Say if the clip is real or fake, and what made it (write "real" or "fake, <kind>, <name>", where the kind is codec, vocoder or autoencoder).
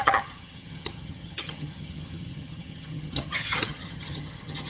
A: fake, vocoder, HiFi-GAN